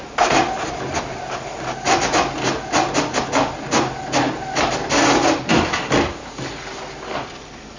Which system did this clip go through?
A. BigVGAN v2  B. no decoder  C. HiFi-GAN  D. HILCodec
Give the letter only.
B